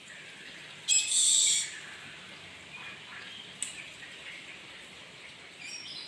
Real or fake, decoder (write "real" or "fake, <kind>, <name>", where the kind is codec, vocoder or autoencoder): real